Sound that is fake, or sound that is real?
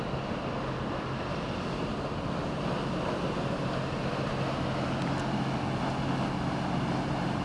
real